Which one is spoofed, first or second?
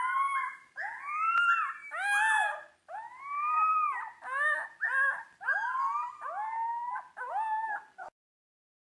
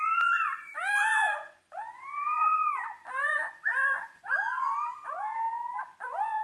second